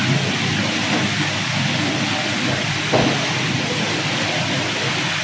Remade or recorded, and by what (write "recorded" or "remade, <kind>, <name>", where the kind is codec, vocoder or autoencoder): recorded